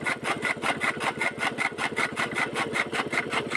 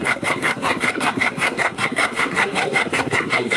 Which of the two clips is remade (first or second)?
second